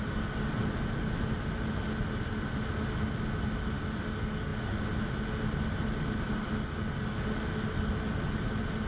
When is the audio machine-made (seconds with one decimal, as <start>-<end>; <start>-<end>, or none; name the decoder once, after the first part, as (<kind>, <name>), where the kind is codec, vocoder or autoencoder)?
none

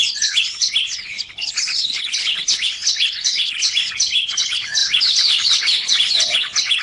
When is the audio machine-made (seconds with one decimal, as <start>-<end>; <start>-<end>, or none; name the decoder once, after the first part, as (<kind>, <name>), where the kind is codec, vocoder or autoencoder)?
0.0-6.8 (codec, HILCodec)